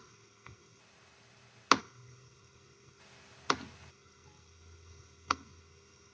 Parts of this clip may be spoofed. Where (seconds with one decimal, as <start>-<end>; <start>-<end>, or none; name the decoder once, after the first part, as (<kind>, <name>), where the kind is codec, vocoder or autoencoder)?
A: 0.0-0.8 (codec, SNAC); 1.8-3.0; 3.9-6.1